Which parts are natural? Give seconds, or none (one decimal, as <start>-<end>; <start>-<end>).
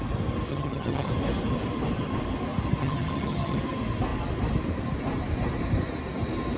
0.0-0.5; 1.1-2.8; 3.6-6.6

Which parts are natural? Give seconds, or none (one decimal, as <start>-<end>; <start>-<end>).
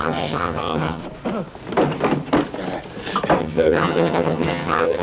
1.0-3.4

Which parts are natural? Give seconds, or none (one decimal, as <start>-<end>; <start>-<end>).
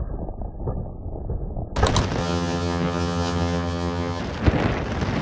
0.0-2.2; 4.2-5.2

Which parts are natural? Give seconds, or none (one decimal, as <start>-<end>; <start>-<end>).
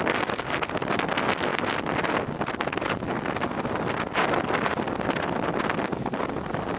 0.0-6.8